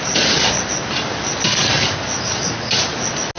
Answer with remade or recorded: recorded